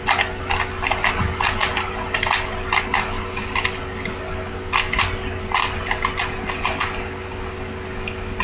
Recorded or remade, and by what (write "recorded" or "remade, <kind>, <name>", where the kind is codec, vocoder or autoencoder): recorded